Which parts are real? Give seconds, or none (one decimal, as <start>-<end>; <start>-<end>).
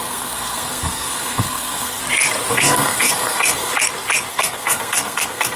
2.0-2.5; 3.7-4.3